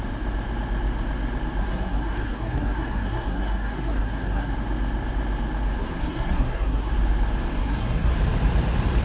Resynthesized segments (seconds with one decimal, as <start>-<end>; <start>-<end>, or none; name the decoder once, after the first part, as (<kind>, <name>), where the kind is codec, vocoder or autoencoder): 1.6-4.5 (codec, SNAC); 5.8-6.9; 7.6-8.1